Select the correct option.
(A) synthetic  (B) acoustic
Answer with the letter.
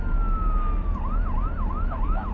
B